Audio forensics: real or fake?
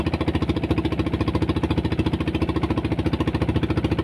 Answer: real